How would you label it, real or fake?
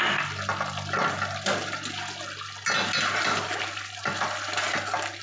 real